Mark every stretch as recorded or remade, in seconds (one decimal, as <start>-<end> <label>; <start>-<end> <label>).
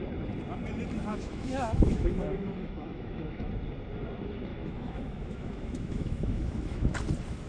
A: 0.0-1.1 recorded; 1.1-3.5 remade; 3.5-4.5 recorded; 4.5-7.0 remade; 7.0-7.5 recorded